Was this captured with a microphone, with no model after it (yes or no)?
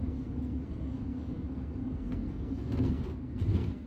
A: no